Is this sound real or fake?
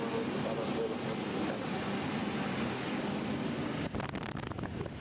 real